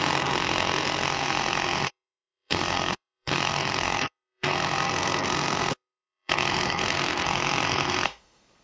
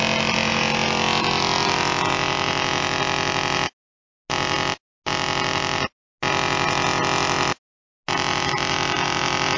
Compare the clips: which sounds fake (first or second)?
first